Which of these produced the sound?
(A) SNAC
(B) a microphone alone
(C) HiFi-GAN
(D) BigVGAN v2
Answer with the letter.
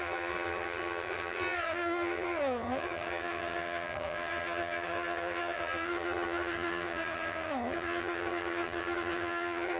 C